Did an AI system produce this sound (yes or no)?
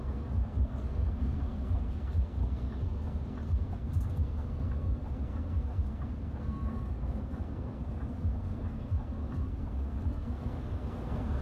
yes